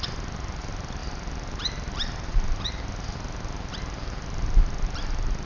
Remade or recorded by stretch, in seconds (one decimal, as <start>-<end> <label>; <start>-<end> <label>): 0.0-5.5 recorded